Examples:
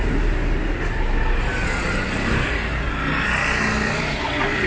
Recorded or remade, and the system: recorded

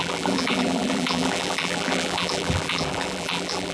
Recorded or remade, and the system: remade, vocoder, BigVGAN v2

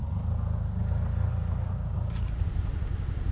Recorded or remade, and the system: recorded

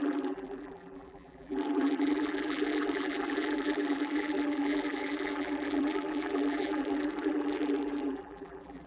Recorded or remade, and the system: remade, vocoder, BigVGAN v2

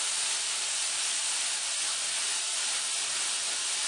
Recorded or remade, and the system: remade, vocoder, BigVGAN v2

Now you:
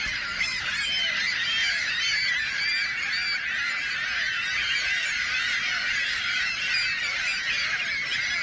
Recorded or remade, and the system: recorded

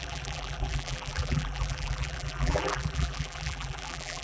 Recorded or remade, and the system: remade, vocoder, BigVGAN v2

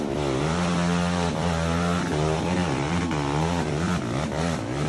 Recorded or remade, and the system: remade, vocoder, BigVGAN v2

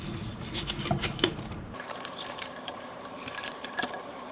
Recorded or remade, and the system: remade, vocoder, BigVGAN v2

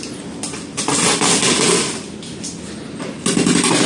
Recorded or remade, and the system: recorded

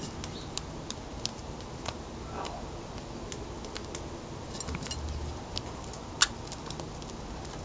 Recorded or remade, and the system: recorded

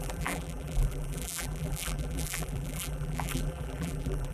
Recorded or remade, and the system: remade, vocoder, BigVGAN v2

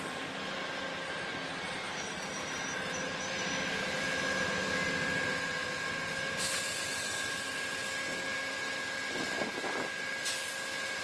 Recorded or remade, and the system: recorded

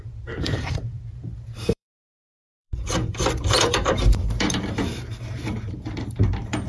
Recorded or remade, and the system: remade, vocoder, BigVGAN v2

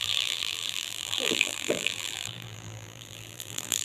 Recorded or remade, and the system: remade, vocoder, BigVGAN v2